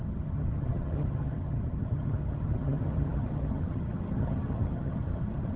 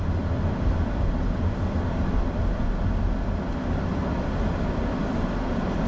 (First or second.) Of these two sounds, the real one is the second